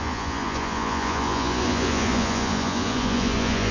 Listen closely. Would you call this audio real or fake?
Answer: fake